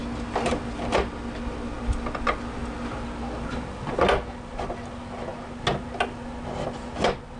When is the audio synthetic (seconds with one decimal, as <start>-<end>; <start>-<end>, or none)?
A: none